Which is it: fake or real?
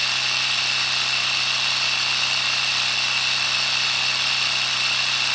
real